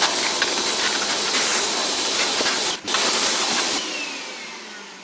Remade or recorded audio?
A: recorded